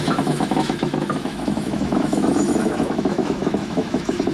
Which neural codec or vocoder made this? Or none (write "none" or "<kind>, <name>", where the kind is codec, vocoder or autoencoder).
autoencoder, DAC-VAE